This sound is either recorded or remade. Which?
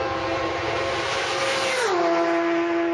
recorded